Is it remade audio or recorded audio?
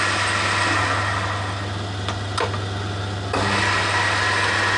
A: recorded